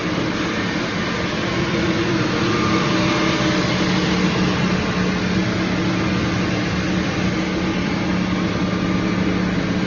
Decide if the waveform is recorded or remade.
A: recorded